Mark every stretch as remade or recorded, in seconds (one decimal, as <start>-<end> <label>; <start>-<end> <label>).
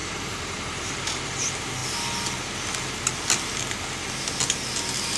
0.0-1.8 remade; 1.8-5.2 recorded